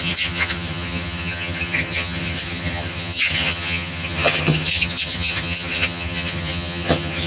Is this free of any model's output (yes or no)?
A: no